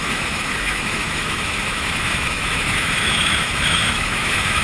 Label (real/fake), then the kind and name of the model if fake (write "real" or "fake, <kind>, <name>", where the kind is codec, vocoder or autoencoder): fake, autoencoder, DAC-VAE